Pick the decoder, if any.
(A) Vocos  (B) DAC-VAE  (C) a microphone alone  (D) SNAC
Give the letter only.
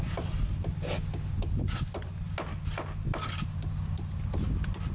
C